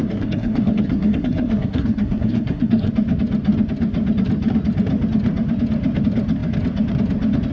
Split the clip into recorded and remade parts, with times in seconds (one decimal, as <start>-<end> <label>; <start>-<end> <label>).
0.0-2.9 remade; 2.9-7.5 recorded